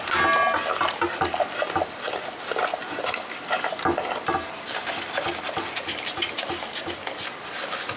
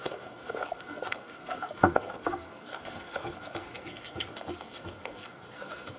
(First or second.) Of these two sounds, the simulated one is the second